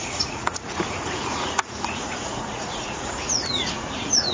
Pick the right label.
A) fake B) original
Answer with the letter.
A